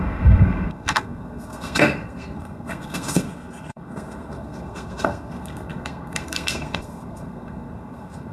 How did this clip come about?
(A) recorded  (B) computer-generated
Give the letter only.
B